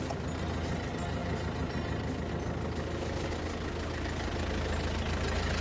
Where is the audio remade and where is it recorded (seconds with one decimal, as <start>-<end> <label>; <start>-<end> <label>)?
0.0-5.6 recorded